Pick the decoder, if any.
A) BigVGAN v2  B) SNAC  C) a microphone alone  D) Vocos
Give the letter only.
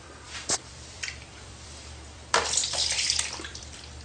A